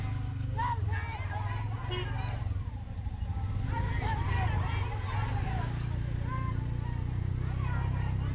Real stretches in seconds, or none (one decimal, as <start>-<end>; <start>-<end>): 0.0-8.3